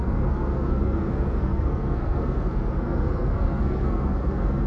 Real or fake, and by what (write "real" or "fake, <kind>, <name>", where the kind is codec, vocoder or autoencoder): fake, codec, SNAC